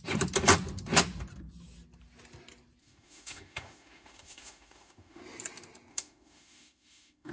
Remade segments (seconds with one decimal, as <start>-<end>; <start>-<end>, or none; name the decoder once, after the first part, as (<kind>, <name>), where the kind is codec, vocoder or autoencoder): 2.8-5.2 (autoencoder, DAC-VAE); 5.9-7.3